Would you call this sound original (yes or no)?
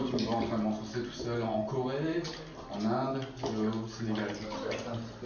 yes